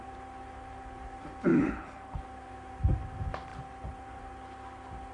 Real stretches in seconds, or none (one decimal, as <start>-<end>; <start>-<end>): 0.0-1.5; 2.2-5.1